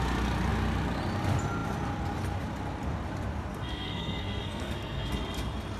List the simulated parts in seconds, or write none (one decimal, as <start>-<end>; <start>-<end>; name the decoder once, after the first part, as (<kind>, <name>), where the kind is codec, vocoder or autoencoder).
3.5-5.1 (codec, SNAC)